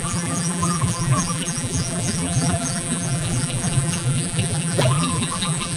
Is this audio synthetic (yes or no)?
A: yes